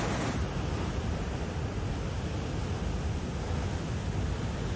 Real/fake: real